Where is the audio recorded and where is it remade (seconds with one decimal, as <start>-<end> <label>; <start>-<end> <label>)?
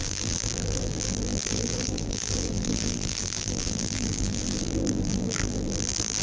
0.0-6.2 remade